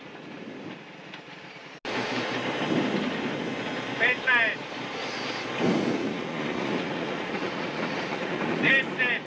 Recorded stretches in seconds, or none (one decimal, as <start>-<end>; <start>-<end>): 0.0-6.0; 8.7-9.3